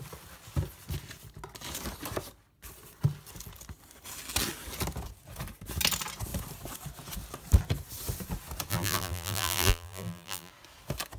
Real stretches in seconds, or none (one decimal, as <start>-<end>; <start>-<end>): 0.0-8.7; 10.5-11.2

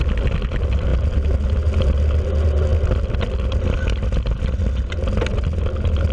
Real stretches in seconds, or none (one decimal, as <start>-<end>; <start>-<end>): 0.0-6.1

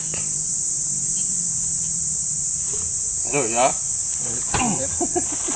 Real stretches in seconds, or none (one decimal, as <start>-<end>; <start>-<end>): 0.0-0.8; 3.3-5.6